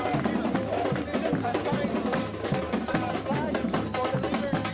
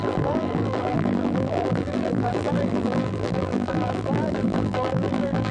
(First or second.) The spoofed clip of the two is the second